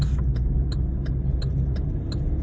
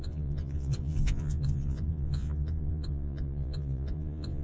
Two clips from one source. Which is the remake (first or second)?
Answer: second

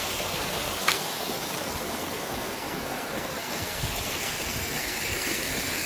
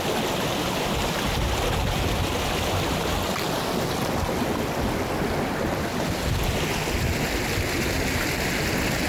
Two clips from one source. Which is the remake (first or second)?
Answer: first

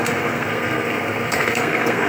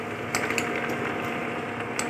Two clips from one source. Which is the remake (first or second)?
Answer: first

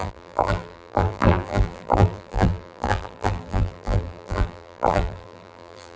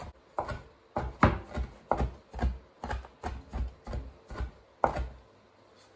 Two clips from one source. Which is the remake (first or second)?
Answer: first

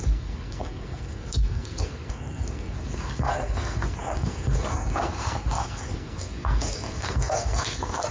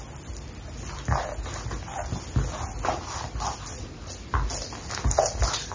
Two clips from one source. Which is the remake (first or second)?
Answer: first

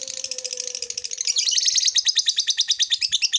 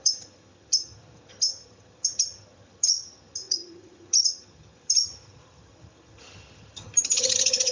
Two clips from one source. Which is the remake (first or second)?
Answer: second